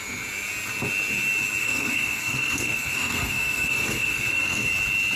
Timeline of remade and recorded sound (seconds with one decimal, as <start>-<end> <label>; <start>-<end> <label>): 0.0-1.6 recorded; 1.6-4.7 remade; 4.7-5.2 recorded